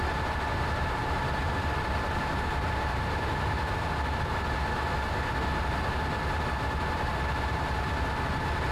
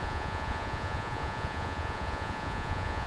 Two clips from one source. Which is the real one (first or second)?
first